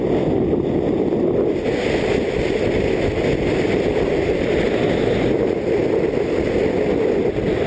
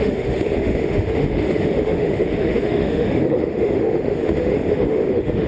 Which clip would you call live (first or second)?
first